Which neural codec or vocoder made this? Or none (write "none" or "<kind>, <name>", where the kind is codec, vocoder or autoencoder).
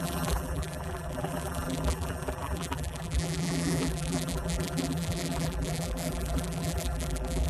vocoder, BigVGAN v2